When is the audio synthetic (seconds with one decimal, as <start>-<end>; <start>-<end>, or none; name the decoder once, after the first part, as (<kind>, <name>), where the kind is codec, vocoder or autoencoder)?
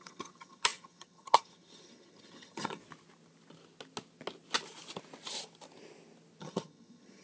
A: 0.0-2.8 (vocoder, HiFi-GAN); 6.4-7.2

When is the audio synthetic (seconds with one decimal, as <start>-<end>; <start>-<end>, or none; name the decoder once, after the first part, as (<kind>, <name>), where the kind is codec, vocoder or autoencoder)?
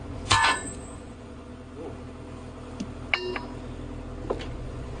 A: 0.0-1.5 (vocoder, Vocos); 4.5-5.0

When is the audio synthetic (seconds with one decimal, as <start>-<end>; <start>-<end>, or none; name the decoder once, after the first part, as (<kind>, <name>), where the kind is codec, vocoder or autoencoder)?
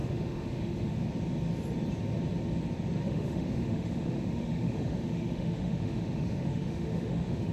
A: 0.0-1.1 (autoencoder, DAC-VAE); 3.0-7.5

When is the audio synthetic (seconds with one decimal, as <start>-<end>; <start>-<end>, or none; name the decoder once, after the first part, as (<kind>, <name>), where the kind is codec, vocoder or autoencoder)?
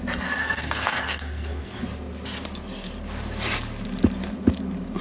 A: 0.4-1.8 (codec, SNAC)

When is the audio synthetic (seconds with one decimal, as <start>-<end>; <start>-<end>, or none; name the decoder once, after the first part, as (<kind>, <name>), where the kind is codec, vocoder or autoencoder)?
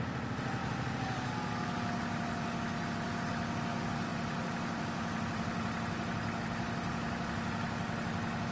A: none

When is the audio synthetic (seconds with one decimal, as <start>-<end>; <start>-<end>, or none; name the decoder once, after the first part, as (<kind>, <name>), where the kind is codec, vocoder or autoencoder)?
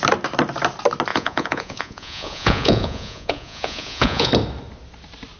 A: 1.1-4.3 (vocoder, Vocos)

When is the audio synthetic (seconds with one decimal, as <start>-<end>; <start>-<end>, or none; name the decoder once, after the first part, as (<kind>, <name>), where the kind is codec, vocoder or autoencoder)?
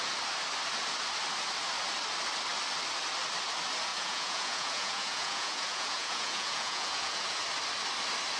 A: 3.9-7.4 (vocoder, Vocos)